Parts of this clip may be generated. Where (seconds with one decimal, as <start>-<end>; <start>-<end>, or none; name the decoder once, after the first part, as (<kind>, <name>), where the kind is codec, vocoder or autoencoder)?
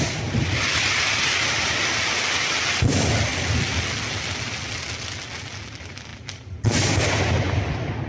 none